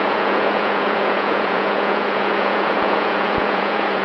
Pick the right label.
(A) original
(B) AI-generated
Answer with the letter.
B